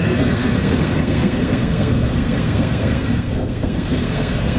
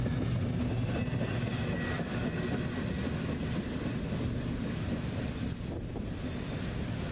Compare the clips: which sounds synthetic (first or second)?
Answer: first